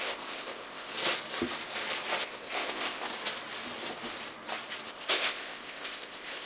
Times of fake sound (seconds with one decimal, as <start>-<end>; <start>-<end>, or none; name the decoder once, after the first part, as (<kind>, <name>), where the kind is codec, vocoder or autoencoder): 0.0-0.9 (codec, ZipCodec); 2.2-3.1; 4.9-6.5